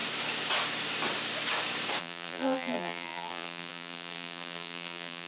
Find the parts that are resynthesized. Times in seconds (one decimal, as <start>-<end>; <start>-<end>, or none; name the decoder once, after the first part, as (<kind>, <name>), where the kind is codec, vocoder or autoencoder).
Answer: 2.0-5.3 (vocoder, BigVGAN v2)